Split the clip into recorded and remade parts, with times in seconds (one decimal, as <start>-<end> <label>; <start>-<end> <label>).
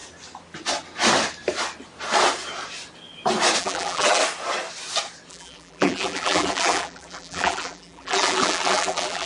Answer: 0.0-3.6 recorded; 3.6-4.2 remade; 4.2-5.3 recorded; 5.3-9.3 remade